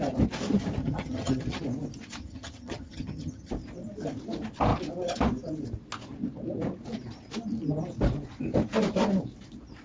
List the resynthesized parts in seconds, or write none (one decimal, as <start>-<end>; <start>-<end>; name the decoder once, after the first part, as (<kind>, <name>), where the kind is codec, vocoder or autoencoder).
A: 0.8-1.6 (vocoder, HiFi-GAN); 2.2-3.5